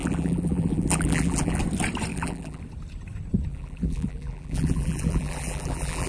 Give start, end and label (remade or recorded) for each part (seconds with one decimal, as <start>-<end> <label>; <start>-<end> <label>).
0.0-1.6 remade; 1.6-2.1 recorded; 2.1-2.6 remade; 2.6-3.5 recorded; 3.5-6.1 remade